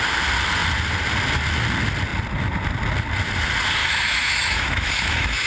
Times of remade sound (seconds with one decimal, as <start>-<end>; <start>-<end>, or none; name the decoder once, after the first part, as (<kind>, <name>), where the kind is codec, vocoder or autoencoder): 3.8-5.5 (autoencoder, DAC-VAE)